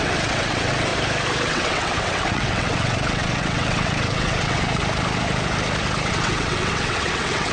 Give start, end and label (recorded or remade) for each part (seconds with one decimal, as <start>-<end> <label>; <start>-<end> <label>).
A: 0.0-0.9 remade; 0.9-1.5 recorded; 1.5-4.8 remade; 4.8-6.1 recorded; 6.1-7.5 remade

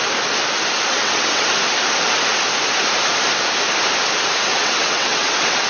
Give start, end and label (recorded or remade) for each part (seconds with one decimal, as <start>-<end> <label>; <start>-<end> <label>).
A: 0.0-0.9 recorded; 0.9-1.5 remade; 1.5-4.5 recorded; 4.5-5.7 remade

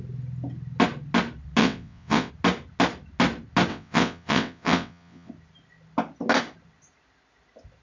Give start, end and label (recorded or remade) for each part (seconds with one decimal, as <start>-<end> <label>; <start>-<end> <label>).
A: 0.0-1.6 recorded; 1.6-2.3 remade; 2.3-3.7 recorded; 3.7-5.3 remade; 5.3-7.8 recorded

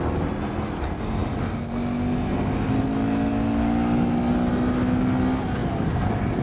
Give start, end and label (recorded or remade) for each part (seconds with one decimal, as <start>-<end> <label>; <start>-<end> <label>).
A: 0.0-6.4 recorded

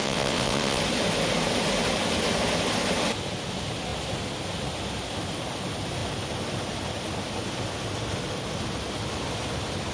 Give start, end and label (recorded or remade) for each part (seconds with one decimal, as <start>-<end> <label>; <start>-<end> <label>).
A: 0.0-0.8 remade; 0.8-9.9 recorded

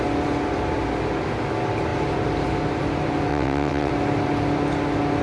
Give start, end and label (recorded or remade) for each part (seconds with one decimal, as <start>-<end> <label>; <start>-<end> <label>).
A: 0.0-3.3 recorded; 3.3-3.9 remade; 3.9-5.2 recorded